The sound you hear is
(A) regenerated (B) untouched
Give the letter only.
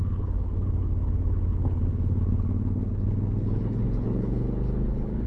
A